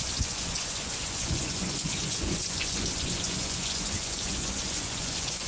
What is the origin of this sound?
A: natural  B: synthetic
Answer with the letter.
B